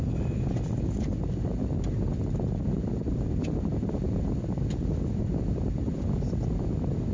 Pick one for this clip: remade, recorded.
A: recorded